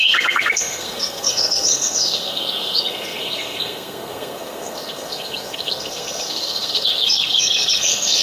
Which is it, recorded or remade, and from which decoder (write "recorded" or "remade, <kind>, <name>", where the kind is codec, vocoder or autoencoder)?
remade, codec, SNAC